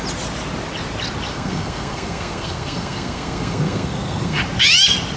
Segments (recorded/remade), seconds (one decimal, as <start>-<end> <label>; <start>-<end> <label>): 0.0-1.3 recorded; 1.3-4.4 remade; 4.4-5.2 recorded